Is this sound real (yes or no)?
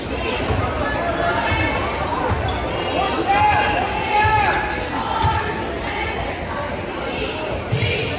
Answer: yes